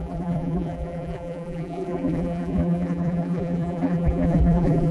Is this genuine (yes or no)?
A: no